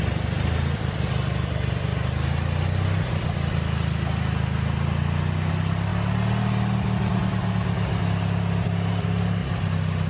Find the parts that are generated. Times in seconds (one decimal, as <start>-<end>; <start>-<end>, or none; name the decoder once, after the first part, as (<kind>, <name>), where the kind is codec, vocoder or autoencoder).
none